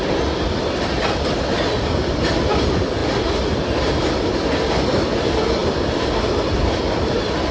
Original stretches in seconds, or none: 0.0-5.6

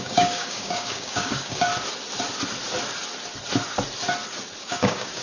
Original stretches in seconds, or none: 1.7-4.6

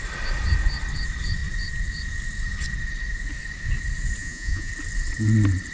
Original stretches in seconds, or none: 0.0-4.2; 4.7-5.7

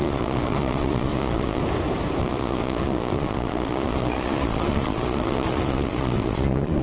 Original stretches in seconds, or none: 1.6-2.2

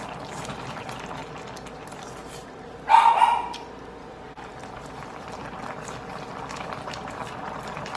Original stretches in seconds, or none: 1.2-3.7